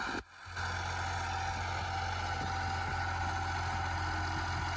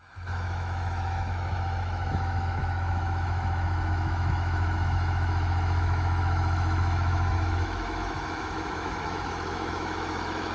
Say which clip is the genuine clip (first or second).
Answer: first